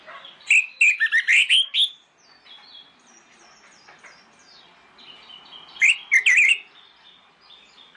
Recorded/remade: recorded